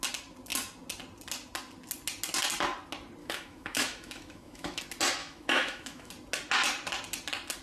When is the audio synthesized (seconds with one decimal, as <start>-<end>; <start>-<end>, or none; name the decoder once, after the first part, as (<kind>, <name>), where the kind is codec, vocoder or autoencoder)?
3.2-4.8 (autoencoder, DAC-VAE); 5.2-6.1